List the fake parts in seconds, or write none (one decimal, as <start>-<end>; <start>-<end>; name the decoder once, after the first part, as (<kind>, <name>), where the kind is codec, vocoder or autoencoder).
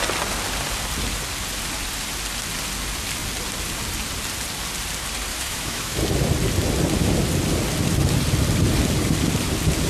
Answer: 5.3-6.0 (autoencoder, DAC-VAE)